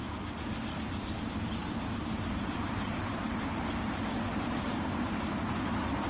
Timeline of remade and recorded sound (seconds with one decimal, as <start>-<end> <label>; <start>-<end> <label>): 0.0-1.0 recorded; 1.0-6.1 remade